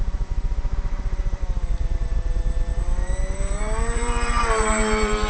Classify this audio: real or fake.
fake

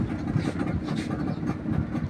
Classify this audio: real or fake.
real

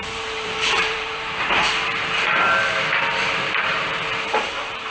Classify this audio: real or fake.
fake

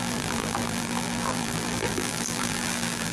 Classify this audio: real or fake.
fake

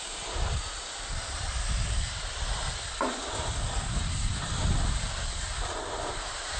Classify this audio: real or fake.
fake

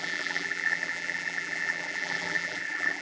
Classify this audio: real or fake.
fake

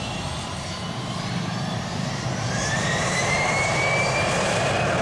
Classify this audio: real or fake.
fake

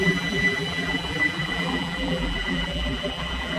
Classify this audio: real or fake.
fake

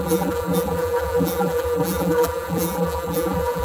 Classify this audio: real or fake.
fake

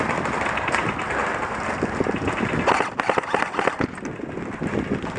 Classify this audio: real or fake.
fake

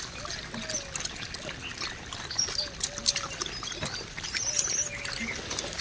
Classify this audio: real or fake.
real